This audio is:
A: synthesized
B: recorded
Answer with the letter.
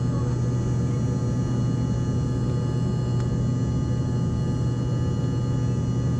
B